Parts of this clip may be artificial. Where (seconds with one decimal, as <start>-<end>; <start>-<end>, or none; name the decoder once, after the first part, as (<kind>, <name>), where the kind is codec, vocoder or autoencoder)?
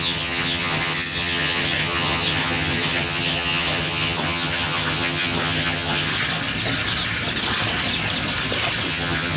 0.0-6.1 (vocoder, HiFi-GAN); 8.9-9.4